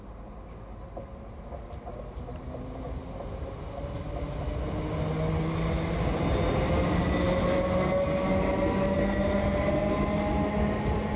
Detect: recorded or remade recorded